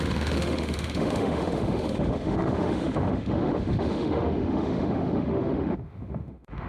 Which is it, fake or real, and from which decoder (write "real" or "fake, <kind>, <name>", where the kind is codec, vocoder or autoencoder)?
fake, autoencoder, DAC-VAE